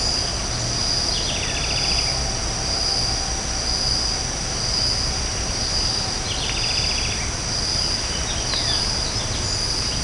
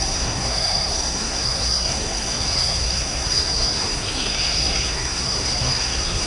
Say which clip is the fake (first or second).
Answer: second